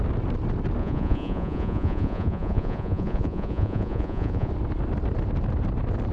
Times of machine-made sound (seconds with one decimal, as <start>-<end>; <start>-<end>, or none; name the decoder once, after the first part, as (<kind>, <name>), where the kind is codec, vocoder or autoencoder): 0.8-4.5 (vocoder, Vocos)